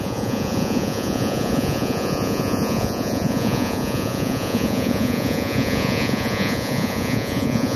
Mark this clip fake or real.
fake